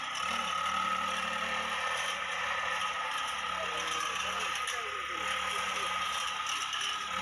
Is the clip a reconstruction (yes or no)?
no